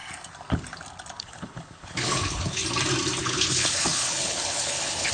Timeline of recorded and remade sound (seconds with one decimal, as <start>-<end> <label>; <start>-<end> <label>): 0.0-1.2 recorded; 1.2-2.6 remade; 2.6-3.2 recorded; 3.2-5.1 remade